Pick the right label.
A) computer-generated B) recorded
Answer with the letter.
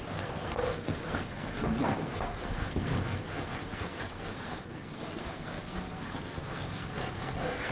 A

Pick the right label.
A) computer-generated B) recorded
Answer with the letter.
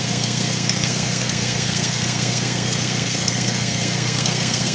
A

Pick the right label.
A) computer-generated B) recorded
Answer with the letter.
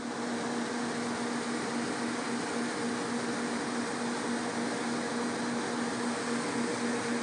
B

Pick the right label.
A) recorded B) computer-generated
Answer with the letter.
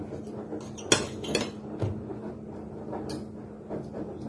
A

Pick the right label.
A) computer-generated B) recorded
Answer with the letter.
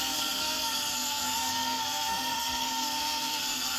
A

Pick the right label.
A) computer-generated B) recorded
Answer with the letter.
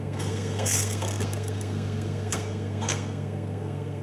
A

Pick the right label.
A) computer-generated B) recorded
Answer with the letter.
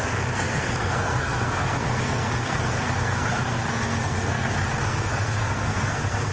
A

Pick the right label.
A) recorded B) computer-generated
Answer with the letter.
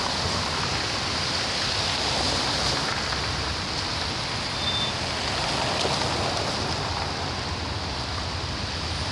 A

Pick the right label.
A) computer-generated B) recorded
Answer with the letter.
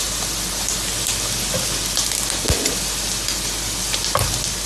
B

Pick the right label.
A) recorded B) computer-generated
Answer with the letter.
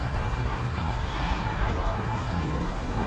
B